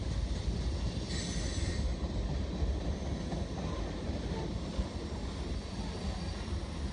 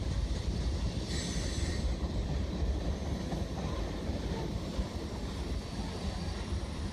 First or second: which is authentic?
first